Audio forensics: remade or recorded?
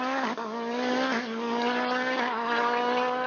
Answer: remade